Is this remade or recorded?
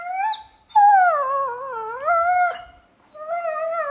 recorded